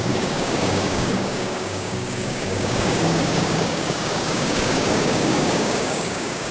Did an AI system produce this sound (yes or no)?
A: yes